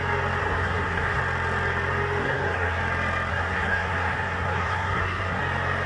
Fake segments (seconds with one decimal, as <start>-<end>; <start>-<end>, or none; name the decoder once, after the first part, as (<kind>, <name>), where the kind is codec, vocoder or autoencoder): 0.4-1.2 (codec, SNAC); 2.2-2.8; 3.3-5.4